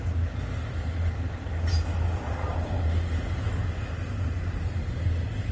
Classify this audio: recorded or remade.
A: recorded